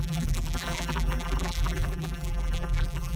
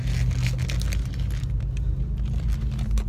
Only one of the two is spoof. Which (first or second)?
first